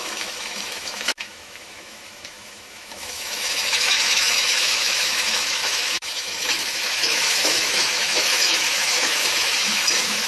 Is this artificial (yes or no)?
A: yes